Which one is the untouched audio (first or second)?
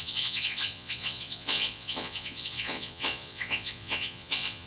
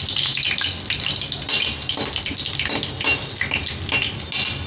second